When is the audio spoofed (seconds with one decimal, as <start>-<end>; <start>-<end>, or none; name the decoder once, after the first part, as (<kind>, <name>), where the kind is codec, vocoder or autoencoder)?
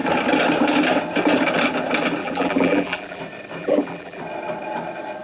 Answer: 2.2-3.2 (vocoder, BigVGAN v2); 3.6-4.2